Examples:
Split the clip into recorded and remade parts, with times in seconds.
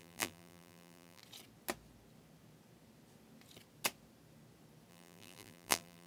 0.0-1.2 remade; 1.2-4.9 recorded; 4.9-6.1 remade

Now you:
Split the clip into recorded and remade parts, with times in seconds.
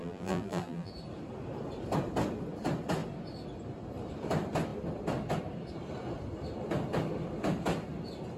0.0-0.9 remade; 0.9-8.4 recorded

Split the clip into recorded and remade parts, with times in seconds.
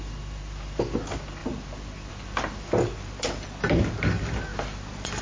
0.0-5.2 recorded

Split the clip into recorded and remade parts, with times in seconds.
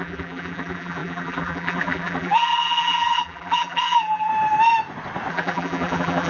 0.0-4.3 remade; 4.3-5.3 recorded; 5.3-6.3 remade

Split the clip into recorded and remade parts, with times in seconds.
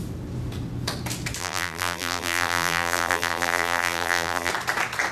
0.0-1.4 recorded; 1.4-4.5 remade; 4.5-5.1 recorded